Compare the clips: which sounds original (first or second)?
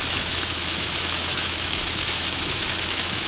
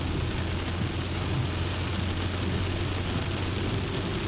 second